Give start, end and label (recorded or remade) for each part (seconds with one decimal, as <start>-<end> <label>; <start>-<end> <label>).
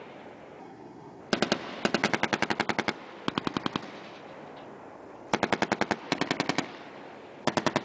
0.0-0.6 recorded; 0.6-1.2 remade; 1.2-7.8 recorded